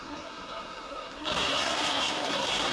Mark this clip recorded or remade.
remade